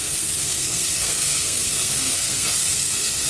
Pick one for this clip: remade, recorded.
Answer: remade